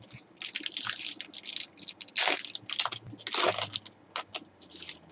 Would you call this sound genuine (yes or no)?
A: yes